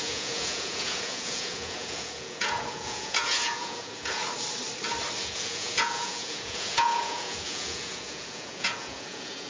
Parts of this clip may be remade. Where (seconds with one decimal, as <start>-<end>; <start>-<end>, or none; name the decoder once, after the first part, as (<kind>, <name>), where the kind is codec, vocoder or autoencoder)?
0.0-4.2 (vocoder, Vocos); 5.2-9.5